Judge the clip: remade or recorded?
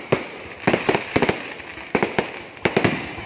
recorded